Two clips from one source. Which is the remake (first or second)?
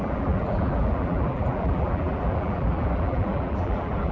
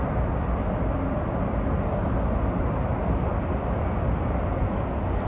first